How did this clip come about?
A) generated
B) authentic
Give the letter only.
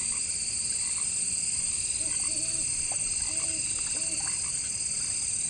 B